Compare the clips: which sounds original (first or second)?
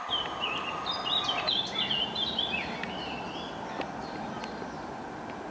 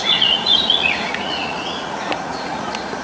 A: first